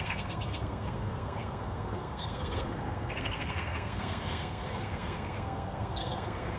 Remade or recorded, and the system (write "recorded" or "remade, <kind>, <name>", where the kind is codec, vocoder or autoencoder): remade, codec, SNAC